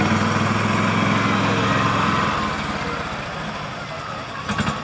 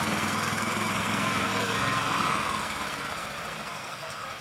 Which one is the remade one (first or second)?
second